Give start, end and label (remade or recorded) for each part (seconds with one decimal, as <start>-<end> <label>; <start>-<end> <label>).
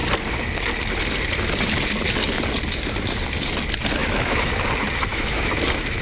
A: 0.0-4.0 recorded; 4.0-4.5 remade; 4.5-5.1 recorded; 5.1-5.6 remade; 5.6-6.0 recorded